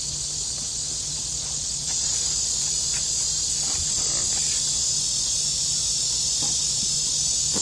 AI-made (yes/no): no